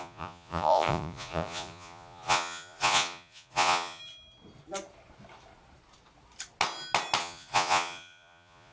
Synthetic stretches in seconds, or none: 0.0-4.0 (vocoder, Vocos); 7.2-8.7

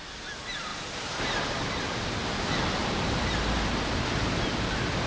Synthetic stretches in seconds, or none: none

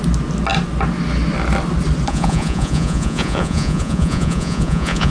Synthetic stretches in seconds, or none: 2.1-5.1 (vocoder, Vocos)

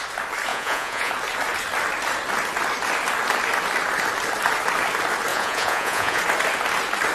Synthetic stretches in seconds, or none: 0.5-1.1 (vocoder, Vocos); 5.3-6.2

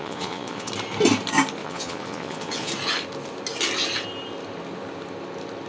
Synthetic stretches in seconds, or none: 0.0-0.7 (vocoder, Vocos); 1.6-2.7

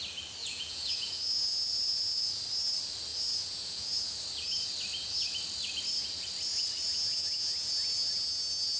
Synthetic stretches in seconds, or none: 0.4-2.4 (vocoder, Vocos); 3.1-4.2

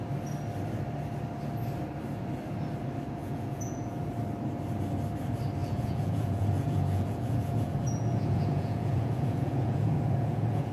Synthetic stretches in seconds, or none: 3.2-4.1 (vocoder, Vocos); 5.6-10.7

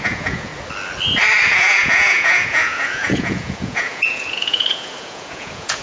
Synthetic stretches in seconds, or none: 0.0-0.5 (vocoder, Vocos); 1.4-5.8